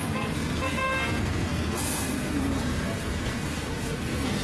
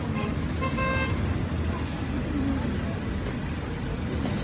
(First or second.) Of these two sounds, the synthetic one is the first